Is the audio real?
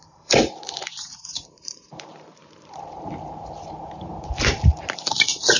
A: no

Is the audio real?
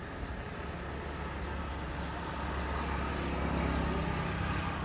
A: yes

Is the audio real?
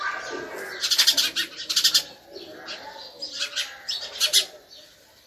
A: yes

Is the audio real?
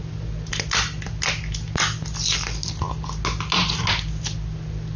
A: yes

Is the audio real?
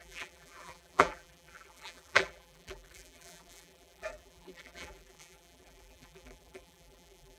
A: no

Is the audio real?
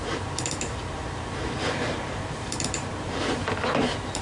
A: no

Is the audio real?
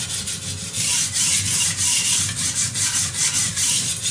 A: no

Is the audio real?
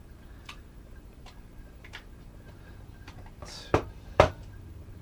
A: no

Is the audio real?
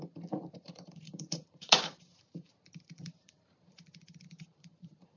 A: no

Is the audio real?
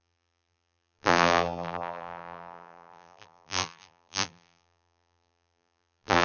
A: no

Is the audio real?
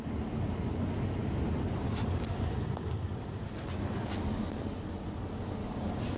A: no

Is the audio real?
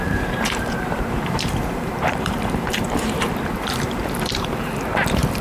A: no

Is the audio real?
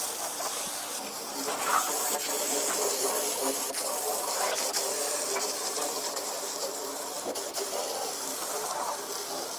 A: no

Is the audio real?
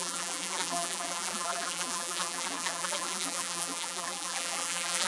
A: no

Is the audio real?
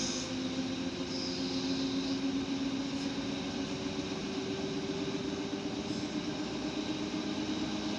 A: yes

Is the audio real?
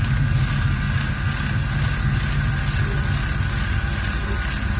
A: yes